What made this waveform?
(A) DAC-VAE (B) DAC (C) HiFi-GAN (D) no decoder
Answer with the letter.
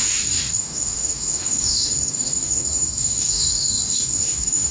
B